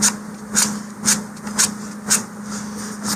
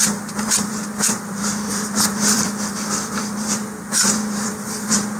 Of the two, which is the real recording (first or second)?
first